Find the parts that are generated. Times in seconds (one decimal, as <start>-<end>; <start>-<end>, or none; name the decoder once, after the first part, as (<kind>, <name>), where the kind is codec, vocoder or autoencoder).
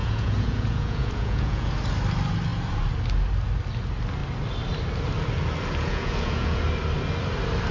0.0-1.7 (vocoder, Vocos); 5.8-6.6